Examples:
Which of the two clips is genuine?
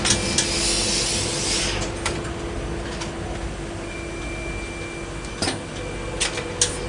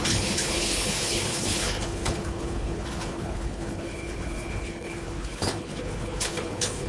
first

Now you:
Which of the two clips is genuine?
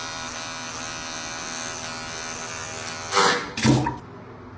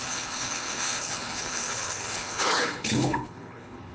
first